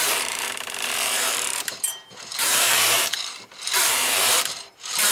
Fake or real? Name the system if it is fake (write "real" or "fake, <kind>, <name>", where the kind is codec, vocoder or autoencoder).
fake, vocoder, BigVGAN v2